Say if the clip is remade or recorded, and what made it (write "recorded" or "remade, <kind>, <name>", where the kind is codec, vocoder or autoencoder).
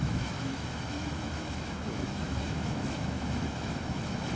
remade, autoencoder, DAC-VAE